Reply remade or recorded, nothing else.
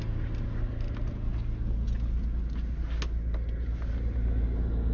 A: recorded